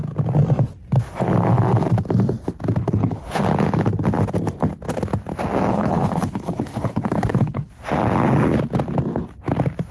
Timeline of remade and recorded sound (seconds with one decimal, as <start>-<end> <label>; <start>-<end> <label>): 0.0-2.8 recorded; 2.8-3.4 remade; 3.4-5.7 recorded; 5.7-7.7 remade; 7.7-9.9 recorded